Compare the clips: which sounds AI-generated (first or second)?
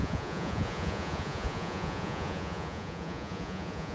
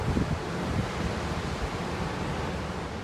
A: first